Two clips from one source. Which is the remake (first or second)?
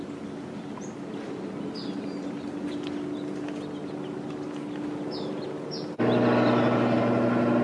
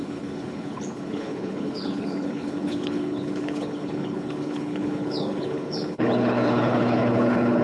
second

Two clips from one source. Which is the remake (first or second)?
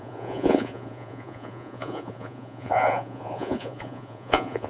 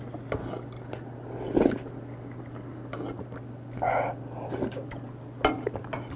first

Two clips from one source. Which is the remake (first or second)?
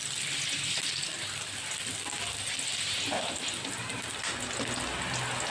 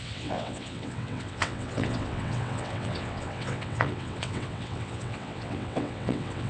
second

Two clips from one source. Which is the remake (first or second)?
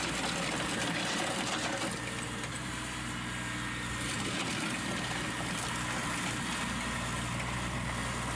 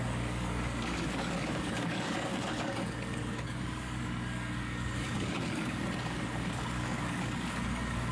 second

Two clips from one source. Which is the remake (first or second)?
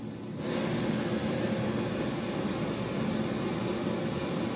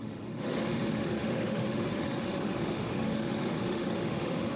second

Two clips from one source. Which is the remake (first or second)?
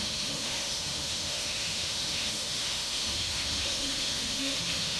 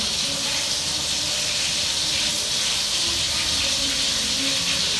first